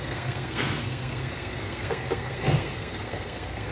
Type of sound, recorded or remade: remade